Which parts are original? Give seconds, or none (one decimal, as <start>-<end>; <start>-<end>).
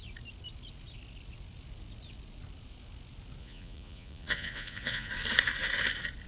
0.0-3.4; 5.1-6.3